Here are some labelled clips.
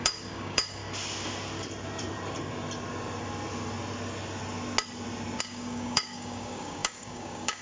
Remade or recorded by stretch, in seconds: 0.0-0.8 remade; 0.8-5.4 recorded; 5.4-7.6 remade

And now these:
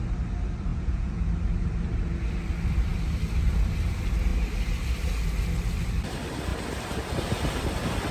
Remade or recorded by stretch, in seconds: 0.0-0.7 recorded; 0.7-1.2 remade; 1.2-8.1 recorded

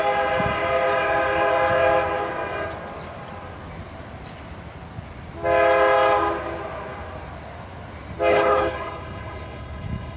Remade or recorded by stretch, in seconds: 0.0-8.3 recorded; 8.3-10.2 remade

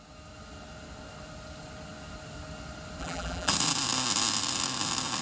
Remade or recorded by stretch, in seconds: 0.0-3.0 recorded; 3.0-3.5 remade; 3.5-5.2 recorded

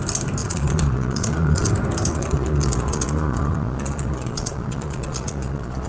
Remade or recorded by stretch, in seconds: 0.0-0.4 recorded; 0.4-1.7 remade; 1.7-2.1 recorded; 2.1-5.9 remade

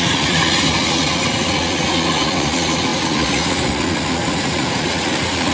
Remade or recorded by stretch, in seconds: 0.0-5.5 remade

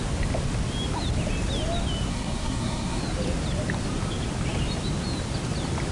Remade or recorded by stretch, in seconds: 0.0-2.1 recorded; 2.1-3.0 remade; 3.0-5.9 recorded